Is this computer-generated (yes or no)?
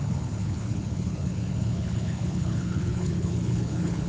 yes